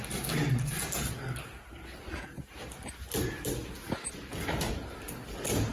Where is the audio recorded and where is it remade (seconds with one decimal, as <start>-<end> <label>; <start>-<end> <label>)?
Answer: 0.0-5.7 recorded